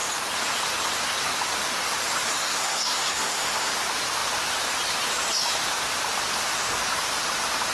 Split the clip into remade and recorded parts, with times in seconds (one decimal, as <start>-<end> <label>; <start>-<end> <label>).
0.0-2.3 recorded; 2.3-3.7 remade; 3.7-7.7 recorded